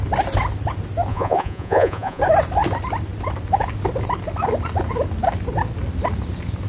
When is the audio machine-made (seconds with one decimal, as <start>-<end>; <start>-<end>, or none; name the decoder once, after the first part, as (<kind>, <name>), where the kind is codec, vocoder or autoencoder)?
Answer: 1.1-2.2 (vocoder, Vocos)